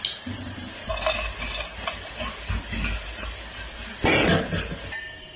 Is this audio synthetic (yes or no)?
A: no